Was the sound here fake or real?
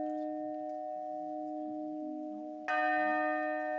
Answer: real